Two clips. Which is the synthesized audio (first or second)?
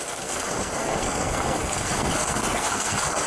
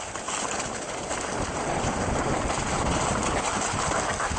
first